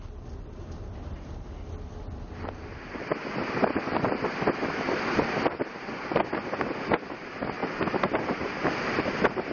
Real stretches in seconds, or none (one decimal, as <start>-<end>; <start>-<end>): 0.0-9.5

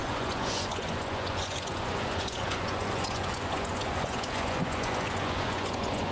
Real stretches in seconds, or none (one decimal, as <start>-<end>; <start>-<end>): none

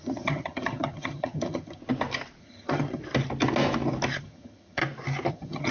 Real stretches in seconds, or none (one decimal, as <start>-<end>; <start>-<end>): 1.8-2.4; 3.0-4.2; 4.8-5.3

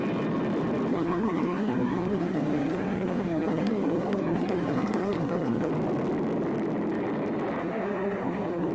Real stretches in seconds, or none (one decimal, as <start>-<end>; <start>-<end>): 0.0-0.9; 5.7-7.6